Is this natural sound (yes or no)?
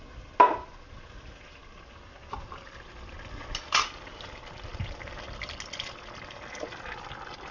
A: yes